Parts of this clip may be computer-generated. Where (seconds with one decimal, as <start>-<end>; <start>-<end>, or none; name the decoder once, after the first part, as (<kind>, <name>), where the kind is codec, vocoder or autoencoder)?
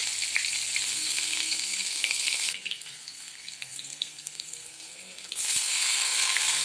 0.9-6.6 (codec, SNAC)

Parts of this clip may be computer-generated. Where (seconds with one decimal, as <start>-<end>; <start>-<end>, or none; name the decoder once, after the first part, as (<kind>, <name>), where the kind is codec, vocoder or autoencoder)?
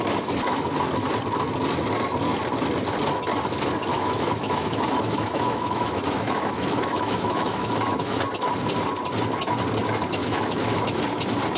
3.9-8.2 (autoencoder, DAC-VAE); 10.2-11.0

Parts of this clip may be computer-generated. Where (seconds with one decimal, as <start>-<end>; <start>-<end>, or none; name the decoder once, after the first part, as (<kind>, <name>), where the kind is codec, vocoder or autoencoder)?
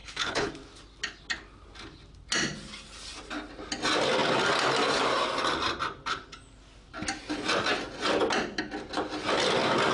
0.0-0.5 (codec, HILCodec)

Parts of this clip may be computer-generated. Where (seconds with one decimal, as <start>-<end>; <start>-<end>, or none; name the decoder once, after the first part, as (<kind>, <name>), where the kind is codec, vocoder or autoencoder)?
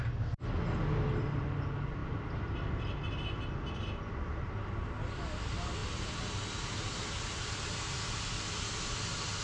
none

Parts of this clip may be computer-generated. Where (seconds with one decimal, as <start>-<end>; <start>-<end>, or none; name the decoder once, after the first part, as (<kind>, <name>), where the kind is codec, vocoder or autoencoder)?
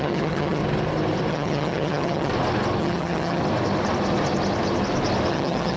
0.0-0.6 (vocoder, HiFi-GAN); 1.3-2.3; 2.8-3.4; 5.3-5.8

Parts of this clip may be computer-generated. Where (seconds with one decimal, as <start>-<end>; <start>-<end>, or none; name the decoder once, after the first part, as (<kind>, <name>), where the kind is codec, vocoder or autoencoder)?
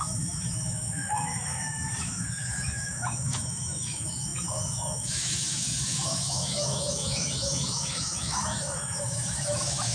0.0-9.9 (autoencoder, DAC-VAE)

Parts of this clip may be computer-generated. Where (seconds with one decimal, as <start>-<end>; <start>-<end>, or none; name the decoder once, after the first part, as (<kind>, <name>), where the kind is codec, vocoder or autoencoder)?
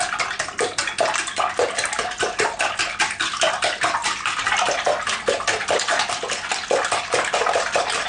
none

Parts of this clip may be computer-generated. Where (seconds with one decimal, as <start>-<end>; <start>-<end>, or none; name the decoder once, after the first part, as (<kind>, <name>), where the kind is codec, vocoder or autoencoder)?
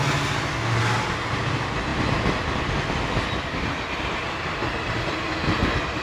none